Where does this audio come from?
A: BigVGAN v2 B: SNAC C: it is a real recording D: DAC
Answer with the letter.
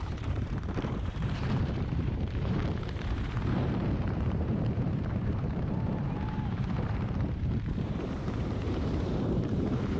A